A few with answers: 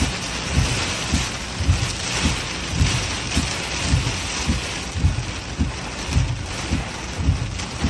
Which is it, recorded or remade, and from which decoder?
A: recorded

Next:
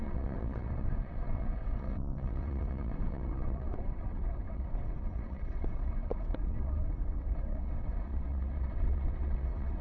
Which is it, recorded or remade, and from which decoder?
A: remade, vocoder, WaveNeXt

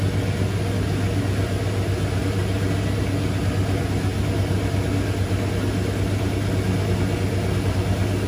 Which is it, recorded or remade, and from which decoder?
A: recorded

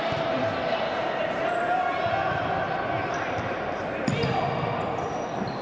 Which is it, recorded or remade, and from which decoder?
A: recorded